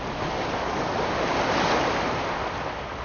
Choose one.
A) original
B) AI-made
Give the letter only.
A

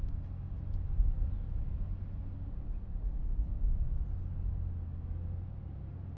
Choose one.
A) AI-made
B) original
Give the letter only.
B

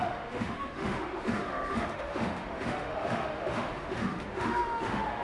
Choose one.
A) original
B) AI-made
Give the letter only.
B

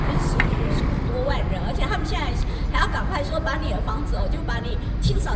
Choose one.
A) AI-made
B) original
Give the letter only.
B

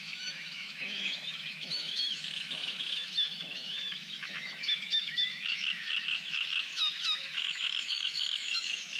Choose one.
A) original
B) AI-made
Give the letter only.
B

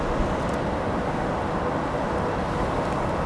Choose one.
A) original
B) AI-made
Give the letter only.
A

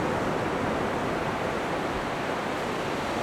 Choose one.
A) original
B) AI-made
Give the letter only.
A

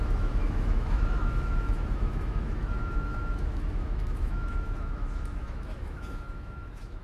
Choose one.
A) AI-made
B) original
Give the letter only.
A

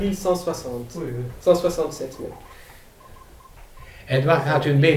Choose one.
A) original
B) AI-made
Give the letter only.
A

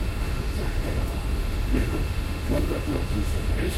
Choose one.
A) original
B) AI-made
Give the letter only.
B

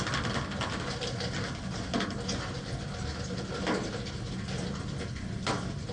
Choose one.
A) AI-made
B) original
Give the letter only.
B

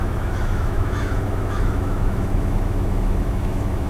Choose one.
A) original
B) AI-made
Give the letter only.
B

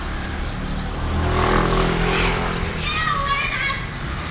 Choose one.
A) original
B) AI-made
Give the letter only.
A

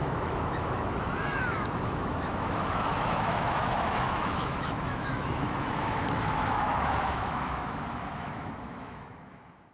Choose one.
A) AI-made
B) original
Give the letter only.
A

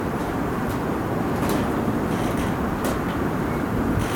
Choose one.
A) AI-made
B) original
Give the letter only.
B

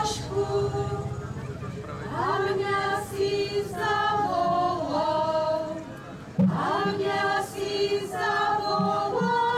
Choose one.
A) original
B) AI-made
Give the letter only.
A